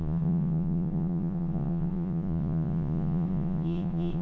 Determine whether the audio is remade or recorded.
remade